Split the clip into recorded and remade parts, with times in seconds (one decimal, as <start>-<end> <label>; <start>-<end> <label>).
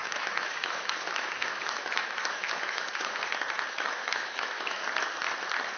0.0-3.2 remade; 3.2-3.7 recorded; 3.7-4.8 remade; 4.8-5.8 recorded